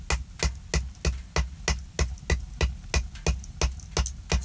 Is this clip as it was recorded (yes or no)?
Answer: yes